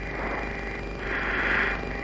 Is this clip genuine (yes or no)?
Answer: yes